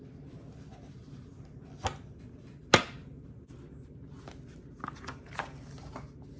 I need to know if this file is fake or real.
real